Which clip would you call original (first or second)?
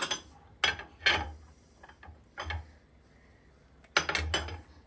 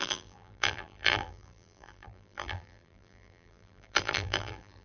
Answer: first